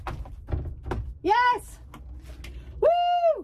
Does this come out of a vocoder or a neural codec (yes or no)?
no